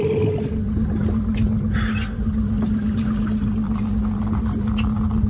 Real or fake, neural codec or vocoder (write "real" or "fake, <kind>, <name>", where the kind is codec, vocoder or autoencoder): real